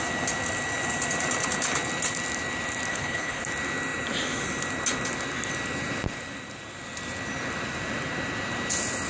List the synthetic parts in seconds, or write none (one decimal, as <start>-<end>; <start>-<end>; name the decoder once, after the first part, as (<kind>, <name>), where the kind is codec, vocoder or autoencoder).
2.9-3.4 (codec, HILCodec)